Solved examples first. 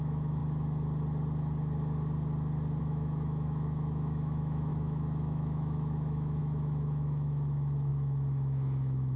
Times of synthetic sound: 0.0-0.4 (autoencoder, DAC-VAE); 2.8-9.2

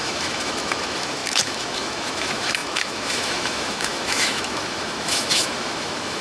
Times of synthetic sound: 0.0-6.2 (autoencoder, DAC-VAE)

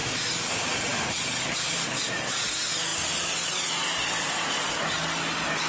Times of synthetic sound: none

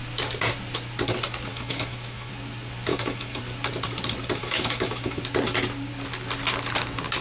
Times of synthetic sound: 1.5-2.3 (autoencoder, DAC-VAE); 2.9-3.4; 4.4-5.2